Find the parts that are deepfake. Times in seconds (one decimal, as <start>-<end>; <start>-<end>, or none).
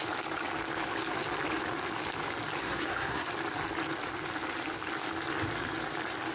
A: 2.6-3.3